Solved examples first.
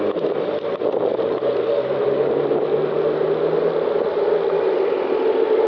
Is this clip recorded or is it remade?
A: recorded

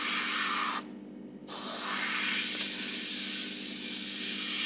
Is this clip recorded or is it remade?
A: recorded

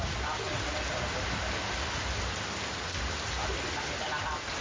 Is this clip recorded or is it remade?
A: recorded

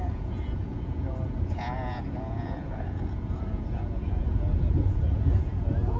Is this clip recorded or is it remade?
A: remade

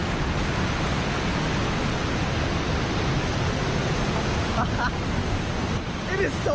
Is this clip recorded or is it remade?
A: recorded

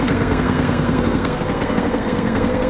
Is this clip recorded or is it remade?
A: remade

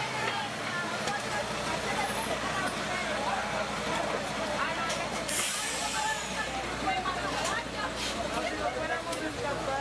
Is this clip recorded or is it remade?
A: recorded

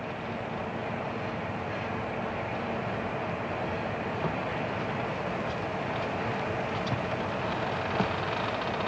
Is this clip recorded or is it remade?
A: recorded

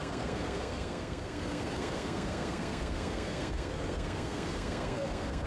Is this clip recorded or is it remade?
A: remade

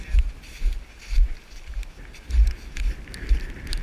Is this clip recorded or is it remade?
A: recorded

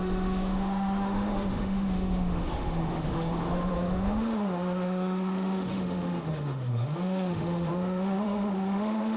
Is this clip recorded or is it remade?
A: remade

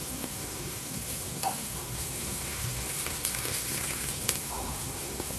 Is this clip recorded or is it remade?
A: remade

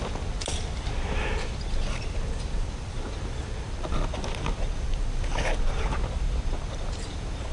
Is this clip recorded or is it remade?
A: recorded